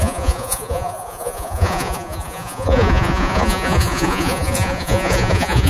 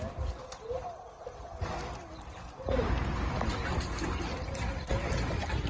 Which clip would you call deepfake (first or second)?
first